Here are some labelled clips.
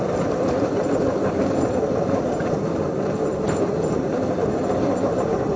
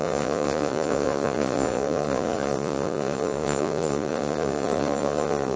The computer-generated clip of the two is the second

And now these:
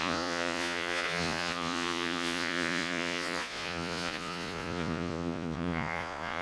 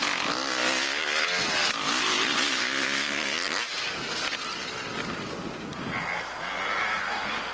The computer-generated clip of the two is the first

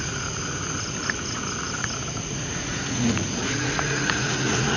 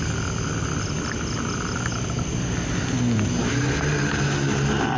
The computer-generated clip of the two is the first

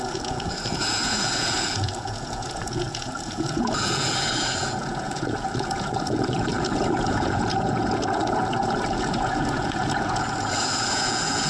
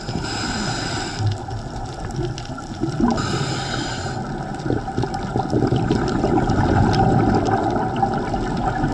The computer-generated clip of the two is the first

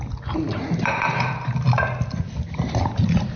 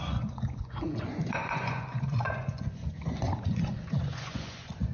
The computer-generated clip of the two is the second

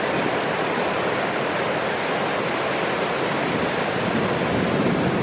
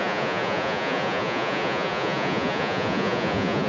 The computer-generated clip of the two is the second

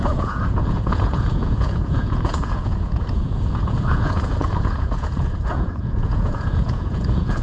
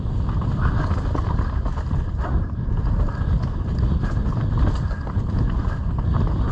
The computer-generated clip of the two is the first